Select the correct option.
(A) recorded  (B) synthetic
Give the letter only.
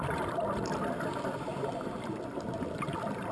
A